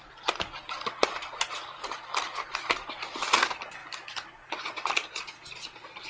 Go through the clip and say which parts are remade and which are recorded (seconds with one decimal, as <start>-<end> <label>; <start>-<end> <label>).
0.0-1.2 recorded; 1.2-2.0 remade; 2.0-3.8 recorded; 3.8-6.1 remade